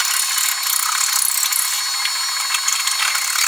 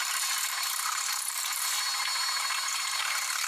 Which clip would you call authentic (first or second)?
first